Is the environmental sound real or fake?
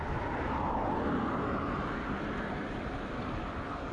real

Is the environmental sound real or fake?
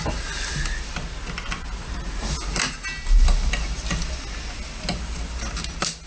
real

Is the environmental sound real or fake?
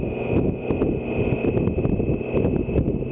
real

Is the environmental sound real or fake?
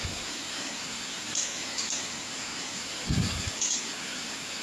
fake